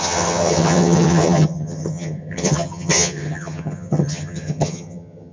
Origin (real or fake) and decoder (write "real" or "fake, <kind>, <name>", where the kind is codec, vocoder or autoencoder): fake, vocoder, HiFi-GAN